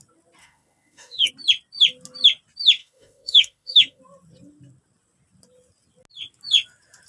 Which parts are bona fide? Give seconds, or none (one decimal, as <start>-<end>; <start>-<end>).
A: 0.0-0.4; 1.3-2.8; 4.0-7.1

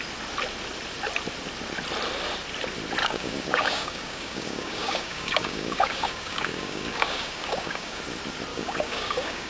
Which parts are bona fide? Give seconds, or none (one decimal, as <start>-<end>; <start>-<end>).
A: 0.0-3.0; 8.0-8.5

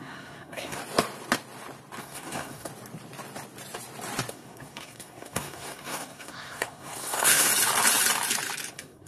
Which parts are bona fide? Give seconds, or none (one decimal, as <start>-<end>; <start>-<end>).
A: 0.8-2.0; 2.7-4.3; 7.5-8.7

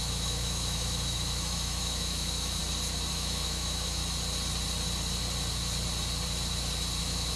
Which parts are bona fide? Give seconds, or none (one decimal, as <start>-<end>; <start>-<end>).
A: 2.6-3.1; 4.0-7.0

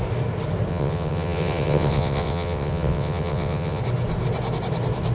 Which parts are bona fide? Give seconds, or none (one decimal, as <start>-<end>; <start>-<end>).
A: 0.0-0.7; 3.8-5.1

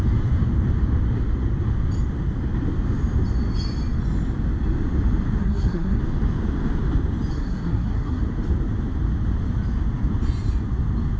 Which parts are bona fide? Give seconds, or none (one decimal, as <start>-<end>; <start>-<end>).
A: 0.0-5.4; 6.0-7.3; 8.2-11.2